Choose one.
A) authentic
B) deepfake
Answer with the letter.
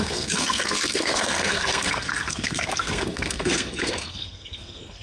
B